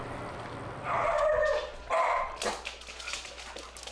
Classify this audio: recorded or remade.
recorded